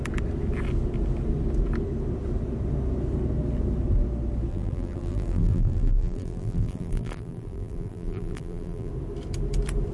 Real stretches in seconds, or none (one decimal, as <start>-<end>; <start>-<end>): 0.0-4.5; 8.9-9.9